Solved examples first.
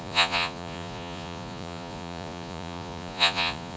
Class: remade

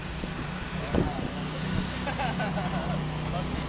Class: recorded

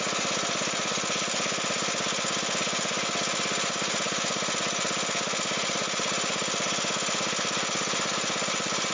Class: recorded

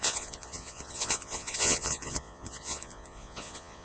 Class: remade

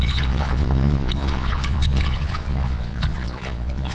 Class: remade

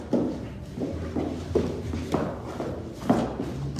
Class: recorded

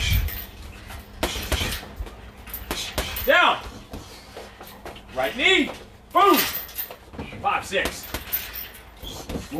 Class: recorded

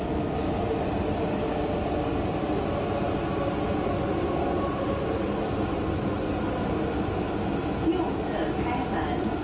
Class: recorded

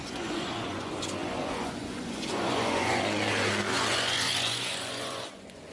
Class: remade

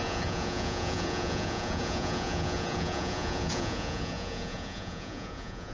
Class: remade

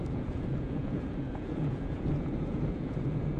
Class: remade